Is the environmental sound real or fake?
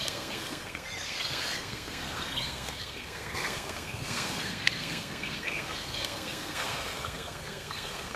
fake